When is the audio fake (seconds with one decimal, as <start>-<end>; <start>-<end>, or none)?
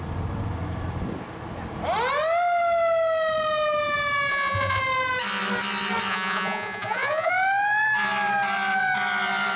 4.3-4.8; 6.1-7.3